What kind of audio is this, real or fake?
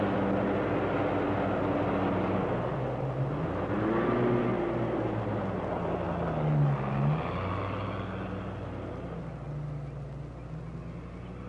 real